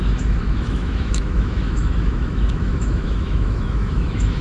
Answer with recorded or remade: remade